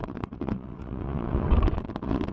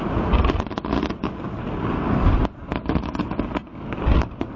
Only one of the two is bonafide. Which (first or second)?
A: second